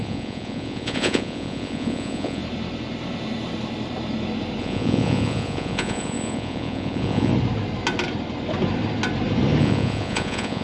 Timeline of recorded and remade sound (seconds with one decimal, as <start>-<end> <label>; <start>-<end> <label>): 0.0-2.4 remade; 2.4-4.6 recorded; 4.6-7.3 remade; 7.3-9.6 recorded; 9.6-10.6 remade